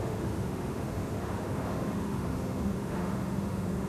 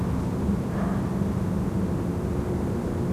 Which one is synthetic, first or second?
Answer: first